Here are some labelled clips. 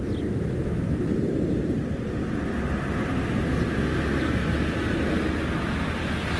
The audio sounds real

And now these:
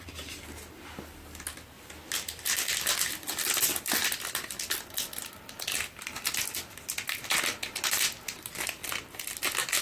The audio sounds real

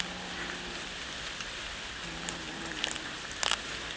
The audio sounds real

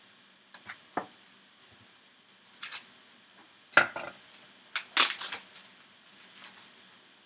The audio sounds real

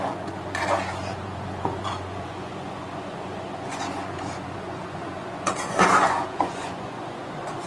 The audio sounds fake